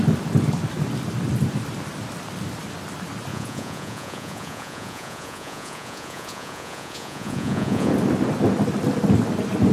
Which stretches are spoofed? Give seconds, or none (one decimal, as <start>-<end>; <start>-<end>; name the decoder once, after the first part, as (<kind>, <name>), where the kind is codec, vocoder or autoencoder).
3.3-7.9 (vocoder, Vocos)